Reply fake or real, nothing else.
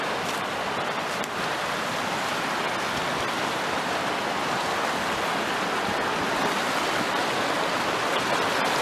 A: real